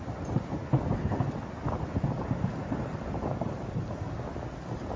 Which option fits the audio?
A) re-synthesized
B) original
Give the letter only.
B